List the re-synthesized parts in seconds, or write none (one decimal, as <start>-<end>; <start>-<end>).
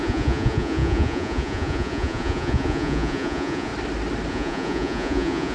0.0-3.7; 4.3-5.5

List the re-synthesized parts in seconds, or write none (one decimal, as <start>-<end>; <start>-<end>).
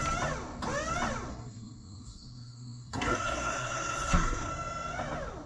1.3-4.5